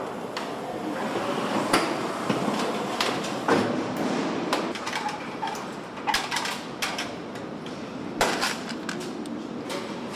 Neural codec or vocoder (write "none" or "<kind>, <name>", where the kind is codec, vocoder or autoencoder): none